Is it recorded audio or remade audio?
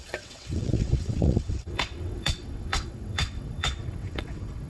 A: remade